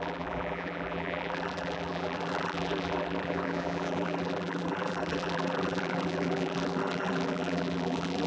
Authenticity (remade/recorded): remade